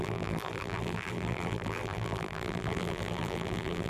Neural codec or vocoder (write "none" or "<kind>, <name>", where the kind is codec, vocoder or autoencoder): vocoder, BigVGAN v2